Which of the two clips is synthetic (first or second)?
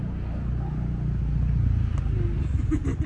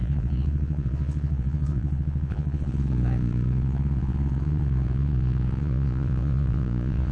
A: second